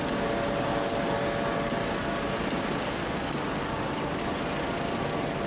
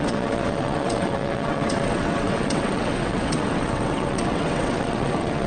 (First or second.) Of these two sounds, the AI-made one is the second